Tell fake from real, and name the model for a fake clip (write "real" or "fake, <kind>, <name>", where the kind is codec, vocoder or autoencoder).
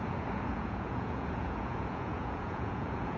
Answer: fake, vocoder, Vocos